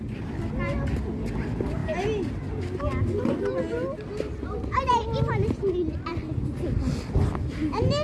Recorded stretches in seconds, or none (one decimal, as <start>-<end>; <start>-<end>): 0.0-8.0